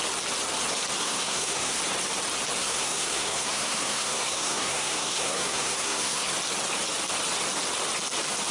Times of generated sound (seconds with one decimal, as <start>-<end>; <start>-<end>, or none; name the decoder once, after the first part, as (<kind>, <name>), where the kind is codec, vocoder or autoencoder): 1.0-1.8 (codec, SNAC); 2.6-6.3